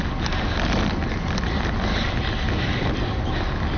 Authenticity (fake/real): real